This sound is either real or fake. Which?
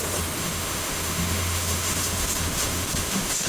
fake